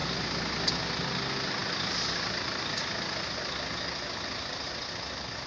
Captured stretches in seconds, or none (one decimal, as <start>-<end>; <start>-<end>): 0.0-5.5